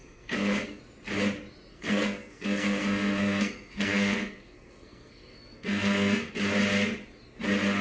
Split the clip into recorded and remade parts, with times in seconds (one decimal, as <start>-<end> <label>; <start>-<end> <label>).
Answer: 0.0-0.8 remade; 0.8-1.7 recorded; 1.7-6.3 remade; 6.3-7.8 recorded